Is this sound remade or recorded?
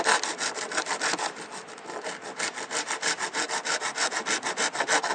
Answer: recorded